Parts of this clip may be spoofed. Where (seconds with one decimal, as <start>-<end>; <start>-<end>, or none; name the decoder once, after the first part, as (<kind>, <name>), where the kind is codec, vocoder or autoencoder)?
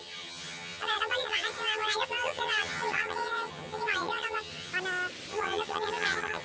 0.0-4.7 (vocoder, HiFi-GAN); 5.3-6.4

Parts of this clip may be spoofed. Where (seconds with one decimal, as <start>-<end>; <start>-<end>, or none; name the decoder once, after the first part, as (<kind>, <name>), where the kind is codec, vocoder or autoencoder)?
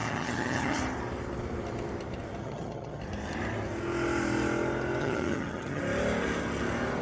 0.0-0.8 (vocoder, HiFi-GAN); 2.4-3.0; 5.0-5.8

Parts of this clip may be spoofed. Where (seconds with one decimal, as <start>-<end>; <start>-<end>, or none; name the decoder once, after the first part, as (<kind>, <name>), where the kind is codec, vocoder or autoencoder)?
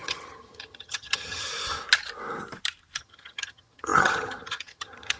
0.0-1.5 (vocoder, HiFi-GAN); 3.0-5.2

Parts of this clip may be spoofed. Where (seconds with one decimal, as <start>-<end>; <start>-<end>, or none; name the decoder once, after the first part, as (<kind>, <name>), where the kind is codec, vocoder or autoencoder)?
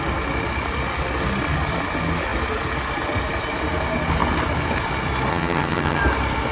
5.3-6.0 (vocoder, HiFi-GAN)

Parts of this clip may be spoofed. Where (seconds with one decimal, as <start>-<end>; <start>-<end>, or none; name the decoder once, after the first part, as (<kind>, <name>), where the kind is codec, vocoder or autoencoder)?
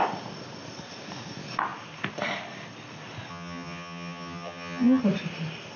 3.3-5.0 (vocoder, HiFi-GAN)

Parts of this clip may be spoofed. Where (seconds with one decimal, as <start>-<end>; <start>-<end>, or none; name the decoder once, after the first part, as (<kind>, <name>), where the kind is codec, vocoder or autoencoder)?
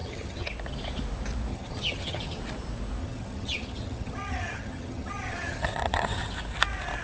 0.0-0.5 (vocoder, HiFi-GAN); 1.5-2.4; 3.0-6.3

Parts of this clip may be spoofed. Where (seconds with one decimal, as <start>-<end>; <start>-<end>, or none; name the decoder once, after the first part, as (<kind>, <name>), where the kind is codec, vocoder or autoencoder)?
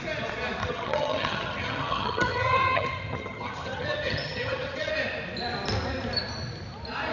0.6-4.9 (vocoder, HiFi-GAN)